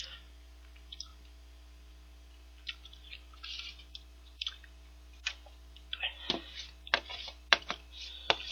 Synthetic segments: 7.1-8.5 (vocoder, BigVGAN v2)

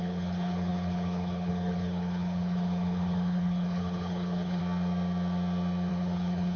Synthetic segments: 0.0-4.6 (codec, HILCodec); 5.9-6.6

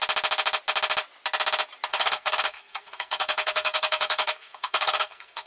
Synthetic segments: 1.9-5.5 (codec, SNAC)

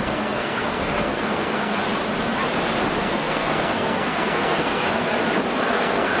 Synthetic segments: 0.0-1.8 (codec, SNAC); 3.0-5.1; 5.6-6.2

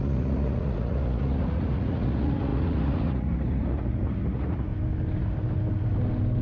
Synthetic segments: 0.0-4.7 (vocoder, Vocos)